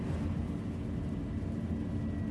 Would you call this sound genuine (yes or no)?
yes